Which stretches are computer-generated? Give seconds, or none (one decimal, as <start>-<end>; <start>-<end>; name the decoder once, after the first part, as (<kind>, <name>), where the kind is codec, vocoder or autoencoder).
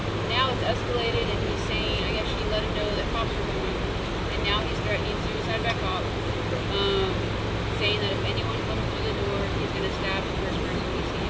none